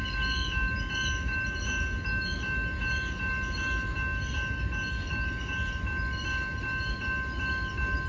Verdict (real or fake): real